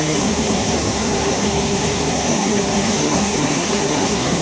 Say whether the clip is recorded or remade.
remade